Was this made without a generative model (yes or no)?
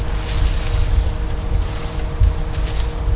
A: yes